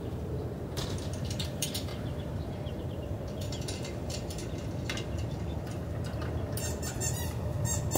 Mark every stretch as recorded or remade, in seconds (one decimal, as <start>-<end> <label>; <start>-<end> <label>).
0.0-1.9 remade; 1.9-2.8 recorded; 2.8-4.4 remade; 4.4-8.0 recorded